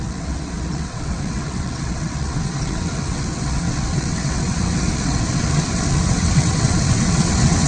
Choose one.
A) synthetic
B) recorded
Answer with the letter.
A